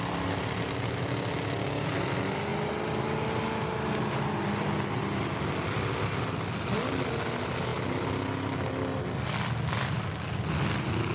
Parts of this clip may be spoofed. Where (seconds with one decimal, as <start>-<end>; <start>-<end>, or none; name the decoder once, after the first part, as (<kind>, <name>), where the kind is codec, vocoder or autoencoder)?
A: none